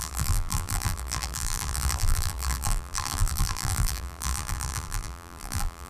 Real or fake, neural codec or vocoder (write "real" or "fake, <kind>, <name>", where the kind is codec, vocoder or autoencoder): fake, vocoder, BigVGAN v2